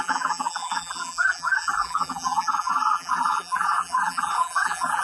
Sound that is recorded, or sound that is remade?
remade